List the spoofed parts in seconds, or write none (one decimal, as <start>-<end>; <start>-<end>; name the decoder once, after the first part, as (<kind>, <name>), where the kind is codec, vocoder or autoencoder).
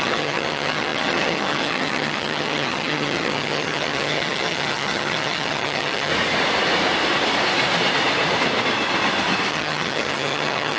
0.0-6.1 (vocoder, HiFi-GAN); 9.5-10.8